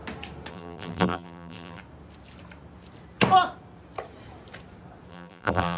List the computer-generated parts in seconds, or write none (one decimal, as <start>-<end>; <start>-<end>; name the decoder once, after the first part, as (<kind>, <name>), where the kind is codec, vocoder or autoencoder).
0.5-1.8 (vocoder, BigVGAN v2); 5.1-5.8

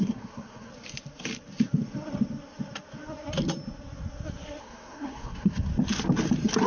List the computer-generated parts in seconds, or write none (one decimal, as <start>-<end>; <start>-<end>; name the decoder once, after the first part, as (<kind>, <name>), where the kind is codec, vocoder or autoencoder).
0.0-0.7 (codec, SNAC); 4.6-5.7

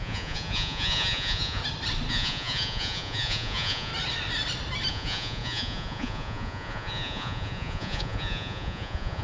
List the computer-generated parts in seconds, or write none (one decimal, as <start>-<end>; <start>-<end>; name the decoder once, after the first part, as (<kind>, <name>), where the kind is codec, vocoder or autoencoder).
0.0-1.6 (vocoder, Vocos); 2.1-3.9; 4.9-9.2

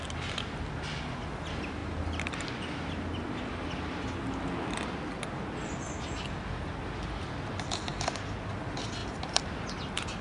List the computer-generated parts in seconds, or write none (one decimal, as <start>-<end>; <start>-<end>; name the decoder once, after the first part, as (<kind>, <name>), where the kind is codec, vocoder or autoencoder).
none

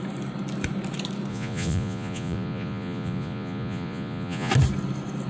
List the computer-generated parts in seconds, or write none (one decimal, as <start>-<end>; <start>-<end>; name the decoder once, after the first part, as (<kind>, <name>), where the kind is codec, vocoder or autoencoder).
1.3-4.5 (vocoder, Vocos)